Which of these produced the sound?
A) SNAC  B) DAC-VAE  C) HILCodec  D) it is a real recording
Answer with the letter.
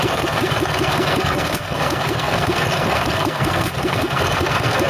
A